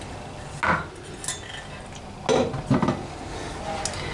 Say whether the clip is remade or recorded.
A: recorded